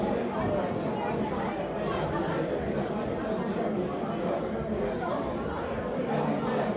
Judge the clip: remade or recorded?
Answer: recorded